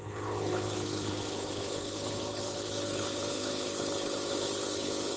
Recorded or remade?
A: remade